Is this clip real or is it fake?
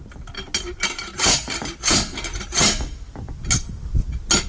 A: real